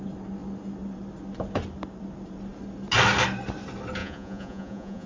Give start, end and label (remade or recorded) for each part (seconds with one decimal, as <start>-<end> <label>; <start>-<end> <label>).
0.0-4.0 recorded; 4.0-5.1 remade